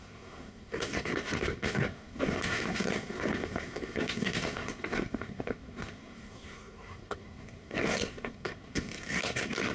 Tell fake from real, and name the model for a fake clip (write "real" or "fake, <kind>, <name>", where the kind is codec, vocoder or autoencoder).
fake, codec, SNAC